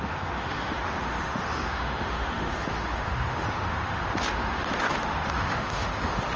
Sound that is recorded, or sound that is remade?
remade